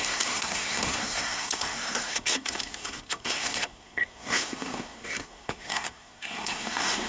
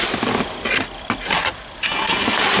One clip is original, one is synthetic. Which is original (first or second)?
second